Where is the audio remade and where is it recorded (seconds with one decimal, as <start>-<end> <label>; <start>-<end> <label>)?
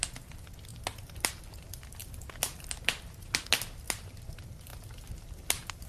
0.0-5.9 recorded